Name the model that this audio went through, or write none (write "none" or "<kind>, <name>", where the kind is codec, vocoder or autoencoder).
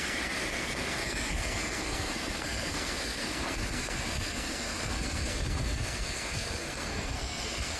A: codec, SNAC